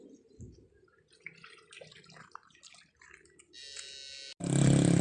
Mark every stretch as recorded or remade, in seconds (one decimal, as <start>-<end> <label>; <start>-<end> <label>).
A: 0.0-5.0 recorded

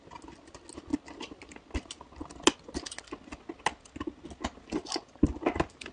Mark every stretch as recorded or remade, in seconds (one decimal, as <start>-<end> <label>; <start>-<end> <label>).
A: 0.0-5.9 recorded